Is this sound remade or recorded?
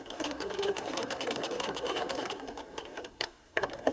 remade